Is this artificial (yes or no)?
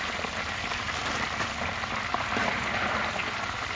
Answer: no